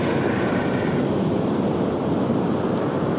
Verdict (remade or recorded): recorded